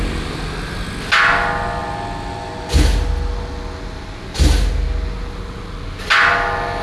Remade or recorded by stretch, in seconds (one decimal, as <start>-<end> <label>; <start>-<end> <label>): 0.0-6.8 recorded